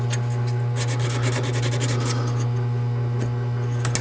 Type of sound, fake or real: real